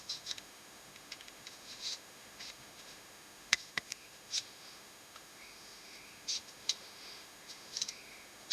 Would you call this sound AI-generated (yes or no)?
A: yes